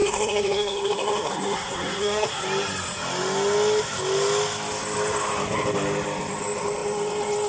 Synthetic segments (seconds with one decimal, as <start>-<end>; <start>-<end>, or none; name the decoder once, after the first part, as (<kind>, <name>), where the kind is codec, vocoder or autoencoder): 0.0-2.4 (codec, SNAC)